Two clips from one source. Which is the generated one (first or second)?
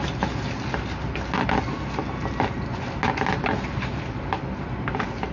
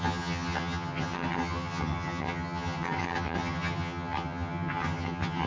second